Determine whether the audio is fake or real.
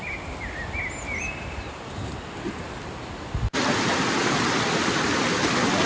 real